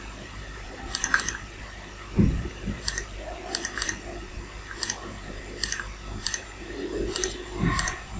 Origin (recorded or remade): remade